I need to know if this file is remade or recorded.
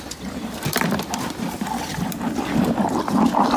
remade